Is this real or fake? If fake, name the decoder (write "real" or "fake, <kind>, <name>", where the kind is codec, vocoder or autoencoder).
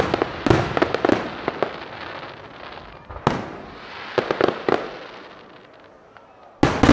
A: real